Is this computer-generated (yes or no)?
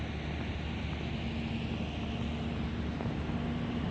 no